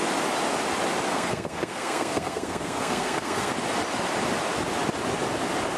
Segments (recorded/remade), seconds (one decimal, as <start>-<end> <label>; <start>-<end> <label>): 0.0-1.1 recorded; 1.1-3.5 remade; 3.5-5.8 recorded